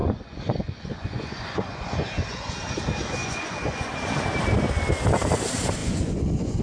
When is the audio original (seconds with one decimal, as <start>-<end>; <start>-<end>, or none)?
2.5-3.2; 3.9-5.8